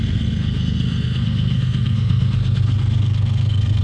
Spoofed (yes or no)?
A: yes